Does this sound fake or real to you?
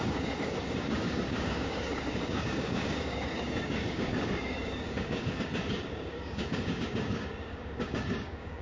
fake